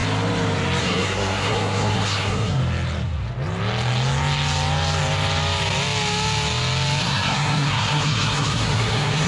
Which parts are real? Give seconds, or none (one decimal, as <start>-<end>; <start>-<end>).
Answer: 0.0-0.8; 2.6-7.0